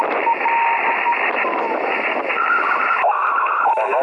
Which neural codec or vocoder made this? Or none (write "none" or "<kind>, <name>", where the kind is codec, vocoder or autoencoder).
none